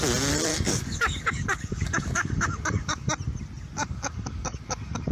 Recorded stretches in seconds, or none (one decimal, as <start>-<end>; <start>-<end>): 0.0-0.5; 3.1-3.8